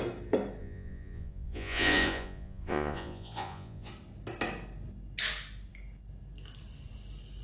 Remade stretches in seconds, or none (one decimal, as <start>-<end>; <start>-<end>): 0.6-3.9